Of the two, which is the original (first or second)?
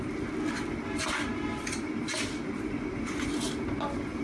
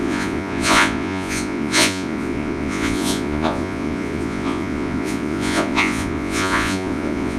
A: first